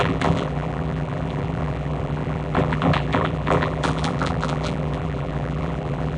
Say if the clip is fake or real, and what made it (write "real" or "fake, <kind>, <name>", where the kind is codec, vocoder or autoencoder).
fake, vocoder, BigVGAN v2